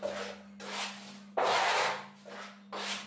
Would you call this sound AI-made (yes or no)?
no